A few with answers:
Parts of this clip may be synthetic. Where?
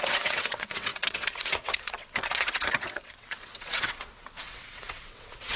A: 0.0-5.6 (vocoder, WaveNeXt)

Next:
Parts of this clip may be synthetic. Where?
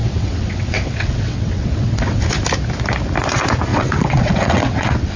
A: 0.0-2.2 (vocoder, WaveNeXt); 3.7-5.2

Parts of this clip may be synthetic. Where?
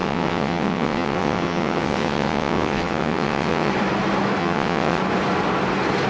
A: 0.0-3.7 (vocoder, WaveNeXt); 4.4-5.0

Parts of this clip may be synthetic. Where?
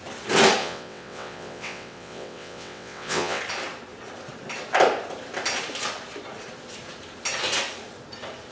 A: 0.6-3.4 (vocoder, WaveNeXt)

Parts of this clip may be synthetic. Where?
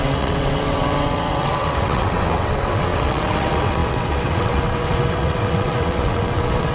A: 0.0-6.7 (vocoder, WaveNeXt)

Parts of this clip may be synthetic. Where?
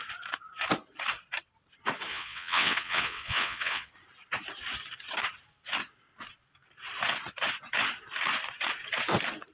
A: 2.1-3.9 (vocoder, WaveNeXt)